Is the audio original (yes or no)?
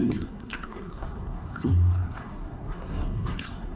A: no